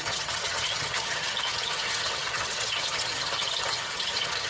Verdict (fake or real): fake